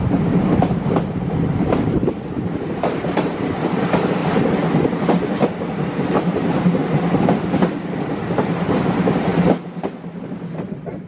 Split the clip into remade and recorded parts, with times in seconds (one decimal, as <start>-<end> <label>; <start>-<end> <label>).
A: 0.0-4.2 remade; 4.2-6.1 recorded; 6.1-6.8 remade; 6.8-8.7 recorded; 8.7-9.3 remade; 9.3-10.2 recorded; 10.2-11.1 remade